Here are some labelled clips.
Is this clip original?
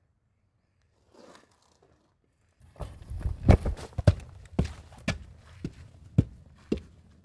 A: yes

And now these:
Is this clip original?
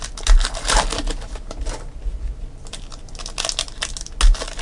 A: yes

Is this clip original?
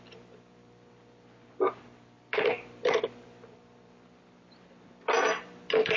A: yes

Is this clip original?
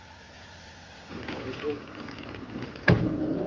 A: yes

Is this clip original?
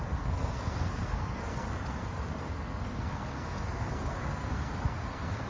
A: no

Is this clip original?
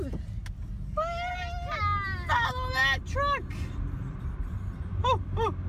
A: yes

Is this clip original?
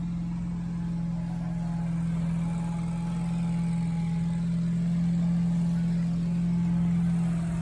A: yes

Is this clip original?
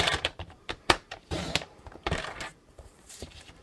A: no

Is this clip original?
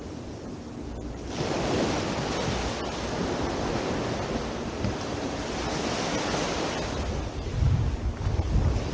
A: yes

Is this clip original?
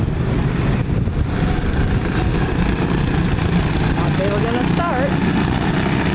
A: yes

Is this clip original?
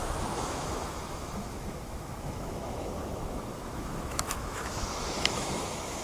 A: no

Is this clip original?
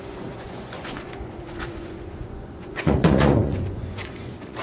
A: no